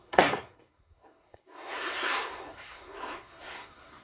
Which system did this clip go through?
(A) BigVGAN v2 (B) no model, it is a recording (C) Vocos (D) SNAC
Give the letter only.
D